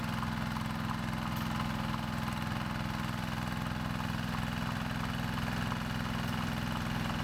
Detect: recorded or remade recorded